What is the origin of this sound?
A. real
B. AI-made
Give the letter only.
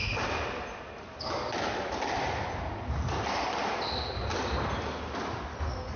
A